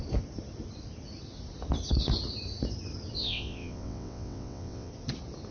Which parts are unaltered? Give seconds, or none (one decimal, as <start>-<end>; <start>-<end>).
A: 0.0-3.2; 4.9-5.5